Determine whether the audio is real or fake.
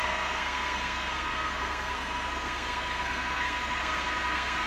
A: fake